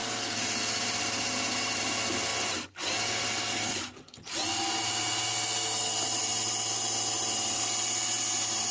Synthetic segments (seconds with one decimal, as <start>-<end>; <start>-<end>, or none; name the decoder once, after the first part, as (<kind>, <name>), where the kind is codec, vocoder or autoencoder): none